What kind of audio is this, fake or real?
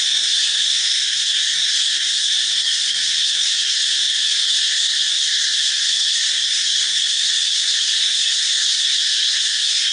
fake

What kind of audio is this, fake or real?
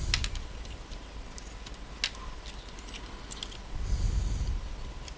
real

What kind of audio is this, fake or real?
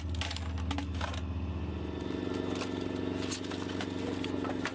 real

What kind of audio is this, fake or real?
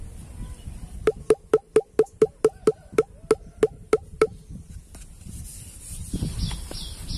real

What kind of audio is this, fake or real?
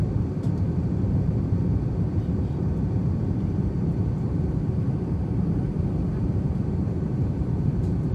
fake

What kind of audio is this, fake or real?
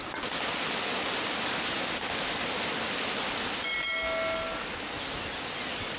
real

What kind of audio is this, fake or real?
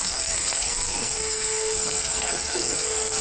fake